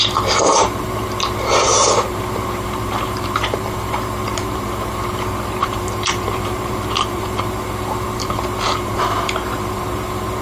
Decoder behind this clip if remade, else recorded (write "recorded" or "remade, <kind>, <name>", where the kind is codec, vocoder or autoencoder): remade, vocoder, BigVGAN v2